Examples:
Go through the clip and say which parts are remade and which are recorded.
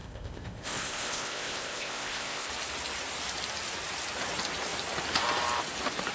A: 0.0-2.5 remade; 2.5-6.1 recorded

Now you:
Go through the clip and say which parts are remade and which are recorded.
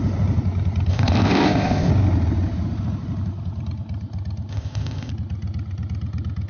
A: 0.0-0.9 recorded; 0.9-1.9 remade; 1.9-4.5 recorded; 4.5-5.1 remade; 5.1-6.5 recorded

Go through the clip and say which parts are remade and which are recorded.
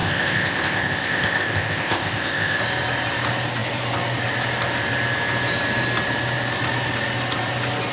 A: 0.0-2.6 remade; 2.6-7.9 recorded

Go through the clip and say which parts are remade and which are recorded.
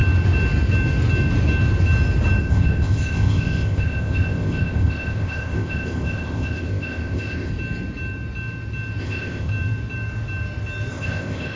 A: 0.0-2.4 recorded; 2.4-7.5 remade; 7.5-9.0 recorded; 9.0-9.5 remade; 9.5-10.9 recorded; 10.9-11.6 remade